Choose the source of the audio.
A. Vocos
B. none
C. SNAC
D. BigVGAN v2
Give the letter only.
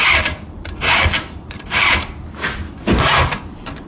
D